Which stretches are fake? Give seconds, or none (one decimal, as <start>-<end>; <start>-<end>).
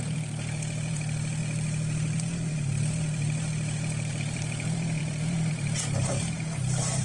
0.0-7.0